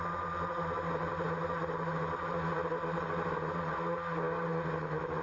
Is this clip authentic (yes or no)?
yes